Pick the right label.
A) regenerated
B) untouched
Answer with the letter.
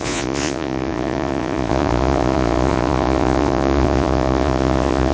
A